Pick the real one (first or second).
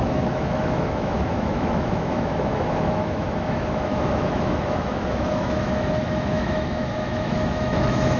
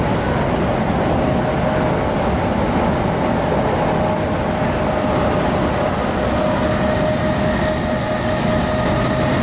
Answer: second